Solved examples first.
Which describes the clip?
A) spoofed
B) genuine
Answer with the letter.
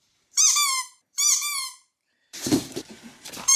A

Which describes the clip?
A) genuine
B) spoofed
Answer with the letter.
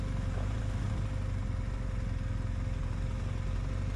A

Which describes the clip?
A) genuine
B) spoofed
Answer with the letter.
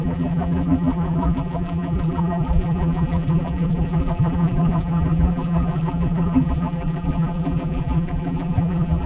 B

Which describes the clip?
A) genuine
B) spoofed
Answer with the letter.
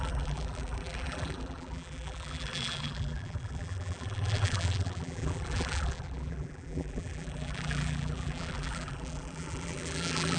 B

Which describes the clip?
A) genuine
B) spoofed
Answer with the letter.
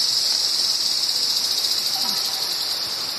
B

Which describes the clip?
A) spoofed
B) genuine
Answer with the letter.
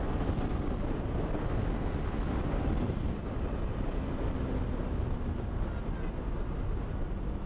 B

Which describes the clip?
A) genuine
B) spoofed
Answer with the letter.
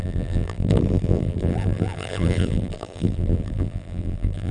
B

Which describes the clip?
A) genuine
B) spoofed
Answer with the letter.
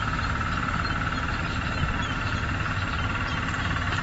A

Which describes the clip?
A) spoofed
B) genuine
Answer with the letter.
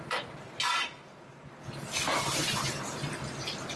A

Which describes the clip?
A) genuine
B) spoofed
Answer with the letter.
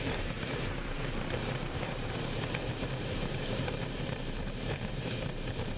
B